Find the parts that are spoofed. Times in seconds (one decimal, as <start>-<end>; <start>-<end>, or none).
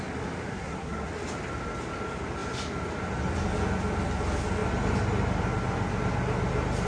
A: 0.5-1.1